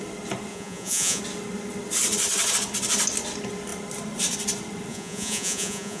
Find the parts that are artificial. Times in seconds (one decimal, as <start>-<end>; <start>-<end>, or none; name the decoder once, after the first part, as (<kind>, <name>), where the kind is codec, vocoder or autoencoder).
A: 0.5-1.2 (vocoder, Vocos); 4.9-6.0